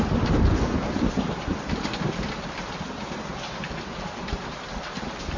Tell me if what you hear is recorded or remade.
recorded